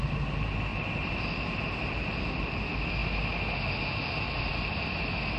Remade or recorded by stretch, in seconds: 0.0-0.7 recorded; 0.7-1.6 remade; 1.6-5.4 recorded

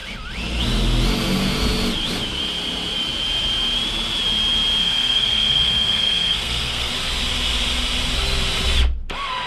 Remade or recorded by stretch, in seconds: 0.0-4.8 recorded; 4.8-6.9 remade; 6.9-9.5 recorded

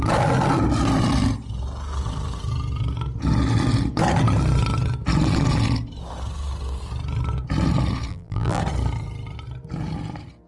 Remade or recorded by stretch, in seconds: 0.0-8.1 recorded; 8.1-8.6 remade; 8.6-10.5 recorded

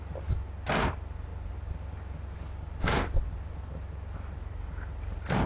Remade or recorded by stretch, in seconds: 0.0-5.5 recorded